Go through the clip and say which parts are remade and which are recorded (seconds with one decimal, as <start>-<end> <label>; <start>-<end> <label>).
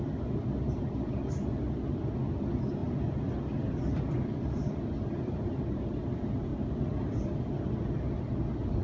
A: 0.0-2.8 recorded; 2.8-5.8 remade; 5.8-6.5 recorded; 6.5-8.0 remade; 8.0-8.8 recorded